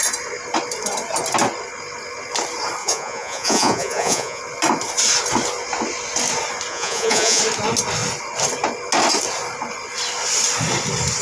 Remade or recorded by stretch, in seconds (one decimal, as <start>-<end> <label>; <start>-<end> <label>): 0.0-2.8 recorded; 2.8-4.4 remade; 4.4-6.7 recorded; 6.7-7.4 remade; 7.4-11.2 recorded